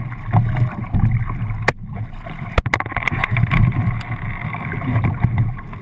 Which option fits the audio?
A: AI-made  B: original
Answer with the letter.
B